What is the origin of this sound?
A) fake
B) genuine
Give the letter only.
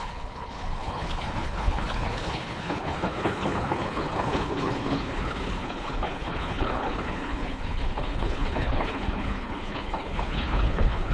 A